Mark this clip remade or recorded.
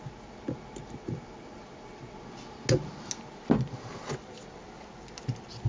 recorded